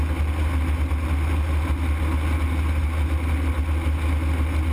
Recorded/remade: recorded